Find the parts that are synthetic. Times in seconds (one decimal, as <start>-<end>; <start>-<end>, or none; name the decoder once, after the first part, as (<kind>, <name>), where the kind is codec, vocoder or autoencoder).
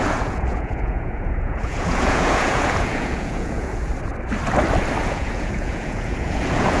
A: 0.0-3.9 (vocoder, Vocos); 5.0-6.8